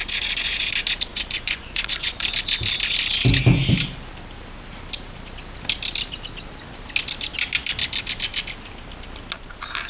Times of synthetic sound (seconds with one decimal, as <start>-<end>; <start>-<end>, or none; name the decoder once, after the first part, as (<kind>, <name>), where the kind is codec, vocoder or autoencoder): 0.0-0.7 (vocoder, Vocos); 1.1-2.2